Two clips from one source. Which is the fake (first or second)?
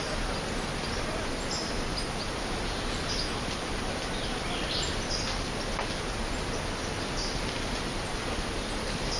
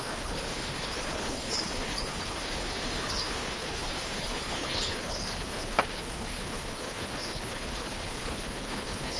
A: second